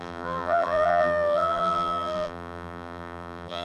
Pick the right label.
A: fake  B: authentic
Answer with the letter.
A